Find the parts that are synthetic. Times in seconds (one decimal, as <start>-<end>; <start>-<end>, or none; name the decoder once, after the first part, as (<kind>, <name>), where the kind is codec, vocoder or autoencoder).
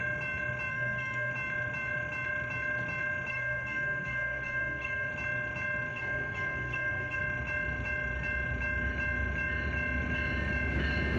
0.7-1.3 (codec, SNAC); 3.3-5.1; 5.9-7.2